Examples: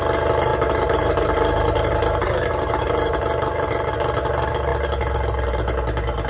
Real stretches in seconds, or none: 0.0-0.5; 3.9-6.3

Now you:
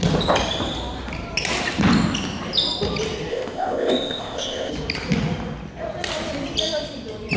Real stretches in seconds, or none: 0.0-3.3; 4.7-7.4

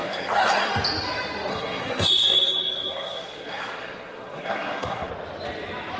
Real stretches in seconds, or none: 0.7-1.5; 5.1-6.0

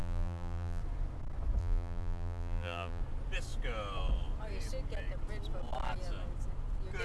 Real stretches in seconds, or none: 0.8-1.6; 3.0-7.0